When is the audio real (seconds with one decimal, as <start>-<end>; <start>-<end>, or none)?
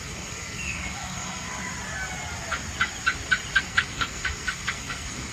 1.6-3.6